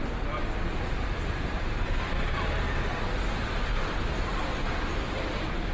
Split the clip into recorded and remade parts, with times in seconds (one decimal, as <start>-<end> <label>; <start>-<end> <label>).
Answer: 0.0-3.4 recorded; 3.4-5.7 remade